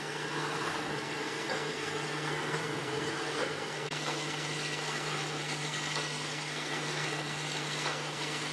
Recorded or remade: remade